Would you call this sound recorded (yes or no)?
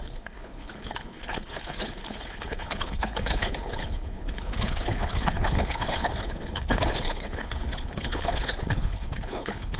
no